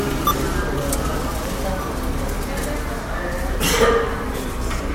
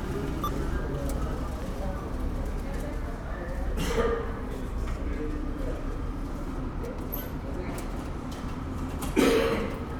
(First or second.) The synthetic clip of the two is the second